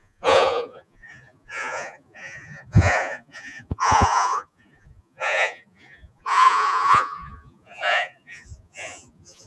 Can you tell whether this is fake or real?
fake